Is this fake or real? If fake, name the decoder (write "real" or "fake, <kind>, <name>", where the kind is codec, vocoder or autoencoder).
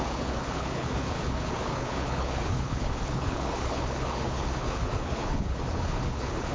fake, codec, HILCodec